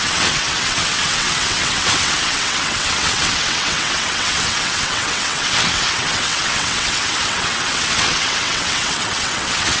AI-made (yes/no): yes